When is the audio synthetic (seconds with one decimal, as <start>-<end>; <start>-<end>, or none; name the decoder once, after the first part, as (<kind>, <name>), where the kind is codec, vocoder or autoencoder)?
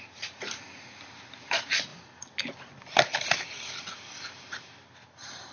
none